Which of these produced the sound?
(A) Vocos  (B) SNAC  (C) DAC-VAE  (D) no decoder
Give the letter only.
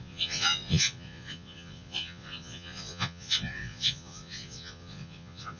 A